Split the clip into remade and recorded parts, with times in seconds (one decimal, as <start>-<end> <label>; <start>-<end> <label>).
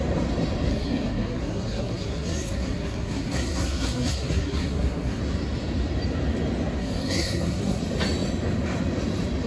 0.0-0.7 recorded; 0.7-5.2 remade; 5.2-6.8 recorded; 6.8-7.8 remade; 7.8-9.5 recorded